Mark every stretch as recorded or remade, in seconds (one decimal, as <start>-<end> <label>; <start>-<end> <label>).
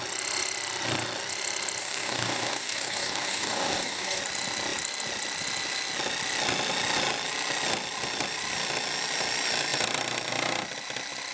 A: 0.0-1.8 recorded; 1.8-4.2 remade; 4.2-11.3 recorded